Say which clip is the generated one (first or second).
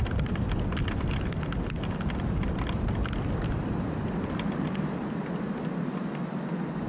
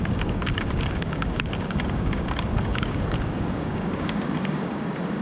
second